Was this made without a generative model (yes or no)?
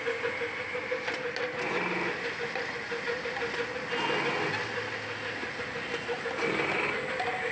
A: yes